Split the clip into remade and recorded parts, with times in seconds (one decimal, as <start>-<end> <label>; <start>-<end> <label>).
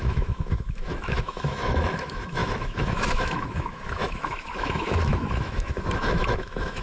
0.0-6.8 remade